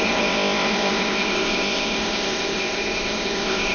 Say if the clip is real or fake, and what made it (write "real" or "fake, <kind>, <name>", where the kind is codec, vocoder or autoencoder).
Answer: fake, codec, ZipCodec